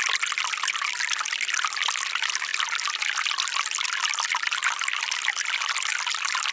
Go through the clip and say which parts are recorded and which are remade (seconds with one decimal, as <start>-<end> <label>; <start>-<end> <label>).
0.0-6.5 recorded